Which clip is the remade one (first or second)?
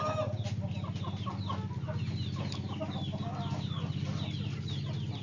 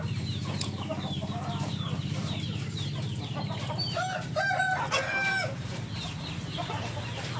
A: second